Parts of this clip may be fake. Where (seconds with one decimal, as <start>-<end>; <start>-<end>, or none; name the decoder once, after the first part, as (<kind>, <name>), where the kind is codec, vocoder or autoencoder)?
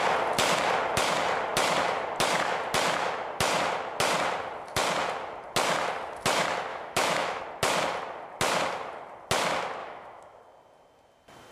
6.7-7.4 (autoencoder, DAC-VAE); 9.8-10.4